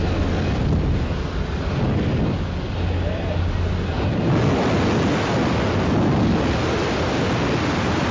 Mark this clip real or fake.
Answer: real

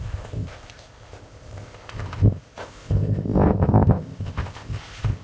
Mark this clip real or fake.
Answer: fake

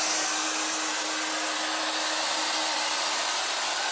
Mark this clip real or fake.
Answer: real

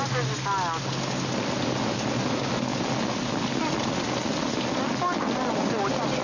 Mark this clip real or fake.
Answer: real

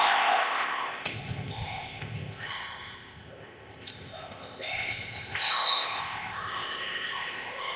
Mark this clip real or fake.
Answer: fake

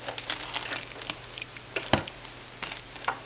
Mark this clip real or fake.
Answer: real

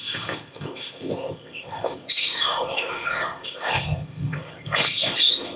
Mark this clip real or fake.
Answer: fake